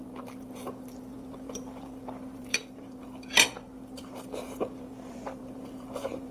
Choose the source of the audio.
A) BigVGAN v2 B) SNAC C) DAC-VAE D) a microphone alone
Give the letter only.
A